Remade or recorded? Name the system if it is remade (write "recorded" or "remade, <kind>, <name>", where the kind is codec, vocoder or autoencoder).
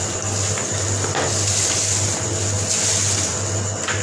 recorded